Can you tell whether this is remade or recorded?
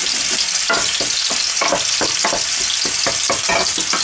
recorded